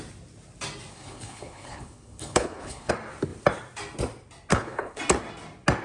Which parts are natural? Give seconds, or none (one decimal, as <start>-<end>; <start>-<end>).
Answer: 0.0-0.9; 2.9-4.5; 5.0-5.8